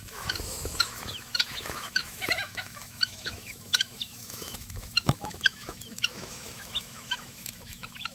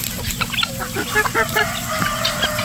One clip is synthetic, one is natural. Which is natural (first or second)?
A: second